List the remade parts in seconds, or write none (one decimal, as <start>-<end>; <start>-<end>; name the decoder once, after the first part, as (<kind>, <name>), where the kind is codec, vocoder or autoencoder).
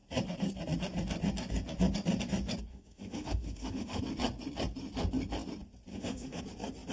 2.7-4.0 (autoencoder, DAC-VAE); 5.9-6.4